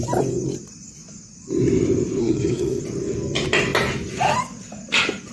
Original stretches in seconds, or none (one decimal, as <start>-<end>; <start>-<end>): 0.0-2.2; 2.8-5.3